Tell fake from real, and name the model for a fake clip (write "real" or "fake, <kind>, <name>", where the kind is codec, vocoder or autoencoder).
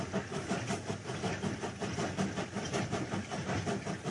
real